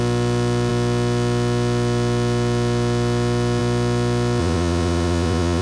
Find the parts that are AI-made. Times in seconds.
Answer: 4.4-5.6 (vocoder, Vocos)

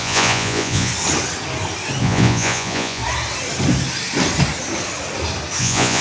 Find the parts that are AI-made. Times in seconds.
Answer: 0.0-0.9 (vocoder, Vocos); 2.0-3.0; 5.6-6.0